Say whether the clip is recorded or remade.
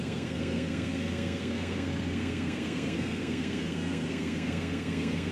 remade